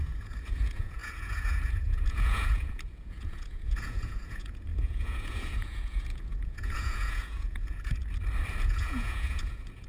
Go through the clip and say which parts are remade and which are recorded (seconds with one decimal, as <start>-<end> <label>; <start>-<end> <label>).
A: 0.0-8.0 remade; 8.0-8.6 recorded; 8.6-9.9 remade